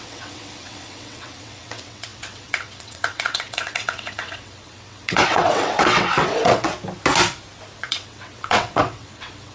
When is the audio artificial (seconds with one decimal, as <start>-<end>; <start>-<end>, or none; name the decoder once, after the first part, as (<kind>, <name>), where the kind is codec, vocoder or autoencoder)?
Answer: 0.0-6.7 (vocoder, WaveNeXt); 7.8-9.5